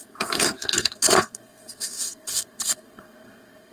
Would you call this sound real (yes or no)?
no